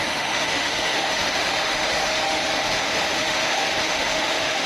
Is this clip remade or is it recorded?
remade